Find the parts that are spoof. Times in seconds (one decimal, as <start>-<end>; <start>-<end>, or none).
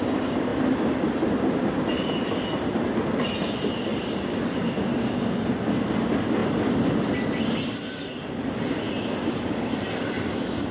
3.9-4.7